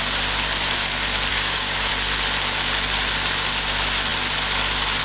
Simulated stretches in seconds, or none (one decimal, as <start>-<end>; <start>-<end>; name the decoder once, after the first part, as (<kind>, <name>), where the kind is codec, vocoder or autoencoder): 1.3-1.9 (codec, DAC)